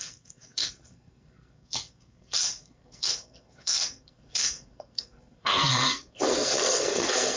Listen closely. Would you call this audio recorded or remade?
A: remade